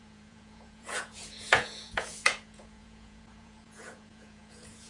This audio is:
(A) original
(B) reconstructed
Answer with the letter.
B